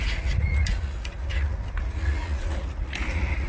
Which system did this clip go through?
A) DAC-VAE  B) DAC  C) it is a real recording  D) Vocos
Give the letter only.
D